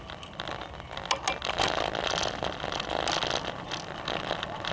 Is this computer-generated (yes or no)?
no